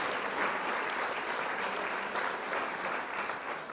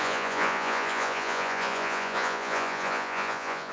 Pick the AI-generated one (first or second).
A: second